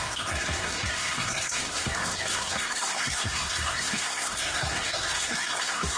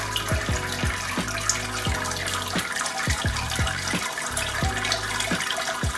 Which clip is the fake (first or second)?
first